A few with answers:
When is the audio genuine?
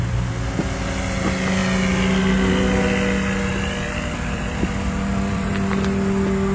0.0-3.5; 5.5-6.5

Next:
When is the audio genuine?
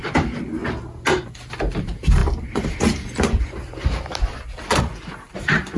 0.6-1.5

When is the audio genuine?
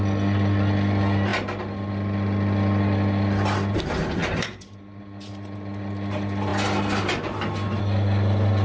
1.3-3.8; 6.5-7.8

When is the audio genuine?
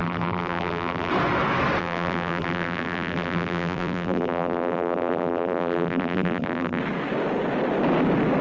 1.1-1.8; 6.8-8.4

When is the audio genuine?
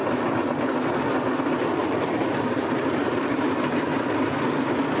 0.6-1.8; 4.0-5.0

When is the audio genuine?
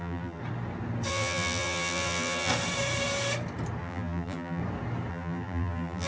0.4-1.1; 2.5-3.8; 4.6-5.1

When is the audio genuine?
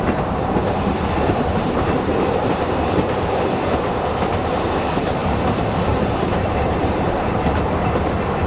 none